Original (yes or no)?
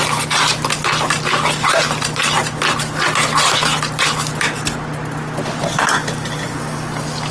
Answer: yes